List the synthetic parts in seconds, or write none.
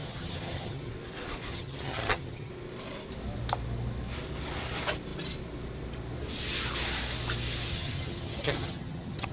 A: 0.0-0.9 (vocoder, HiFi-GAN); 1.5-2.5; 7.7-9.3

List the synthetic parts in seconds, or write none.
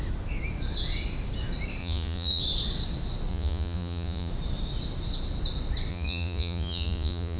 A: 1.8-2.4 (vocoder, Vocos); 3.3-4.3; 5.9-7.4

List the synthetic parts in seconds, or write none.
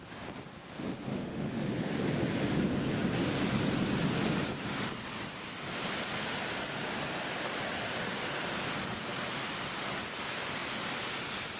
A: 1.1-1.7 (autoencoder, DAC-VAE)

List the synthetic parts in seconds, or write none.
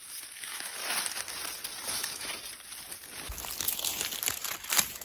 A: 0.0-0.8 (autoencoder, DAC-VAE); 1.9-2.3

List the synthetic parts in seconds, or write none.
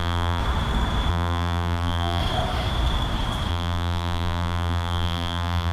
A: 0.0-0.4 (vocoder, BigVGAN v2); 1.1-2.2; 3.5-5.7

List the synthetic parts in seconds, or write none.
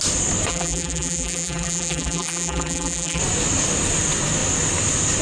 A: 0.5-3.2 (vocoder, BigVGAN v2)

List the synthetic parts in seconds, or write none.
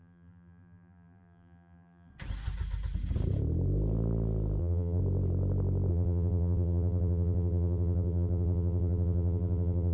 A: 0.0-2.1 (vocoder, BigVGAN v2); 4.6-5.0; 5.9-9.9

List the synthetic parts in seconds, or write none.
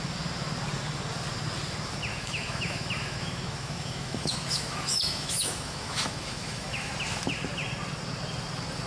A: 2.1-6.9 (autoencoder, DAC-VAE)